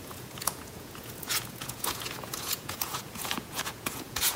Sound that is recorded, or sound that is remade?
remade